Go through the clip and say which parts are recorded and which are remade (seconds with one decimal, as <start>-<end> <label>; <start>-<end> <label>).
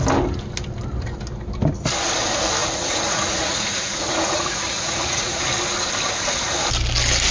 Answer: 0.0-2.6 recorded; 2.6-5.4 remade; 5.4-7.3 recorded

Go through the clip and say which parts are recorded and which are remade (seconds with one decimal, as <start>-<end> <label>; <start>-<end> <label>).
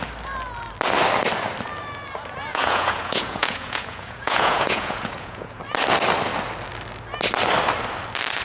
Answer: 0.0-2.5 recorded; 2.5-5.6 remade; 5.6-8.4 recorded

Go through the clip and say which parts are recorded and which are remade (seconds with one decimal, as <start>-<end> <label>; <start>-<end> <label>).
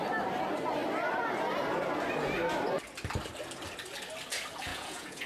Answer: 0.0-4.7 recorded; 4.7-5.3 remade